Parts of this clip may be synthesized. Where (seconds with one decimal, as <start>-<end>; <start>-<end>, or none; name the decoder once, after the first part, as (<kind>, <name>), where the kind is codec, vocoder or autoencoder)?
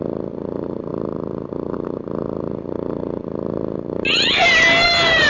none